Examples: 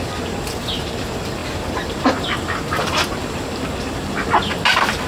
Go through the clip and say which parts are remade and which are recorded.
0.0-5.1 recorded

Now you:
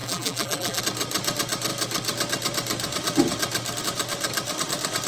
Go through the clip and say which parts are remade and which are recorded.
0.0-0.8 remade; 0.8-5.1 recorded